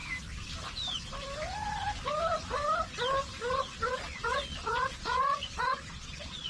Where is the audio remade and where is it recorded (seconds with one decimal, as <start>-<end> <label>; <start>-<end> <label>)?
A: 0.0-3.9 recorded; 3.9-6.5 remade